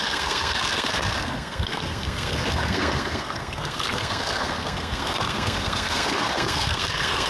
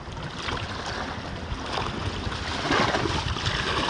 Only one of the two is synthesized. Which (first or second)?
first